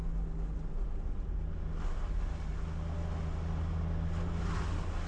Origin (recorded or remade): recorded